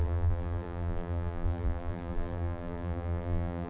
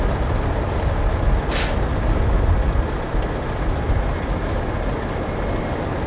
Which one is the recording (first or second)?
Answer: second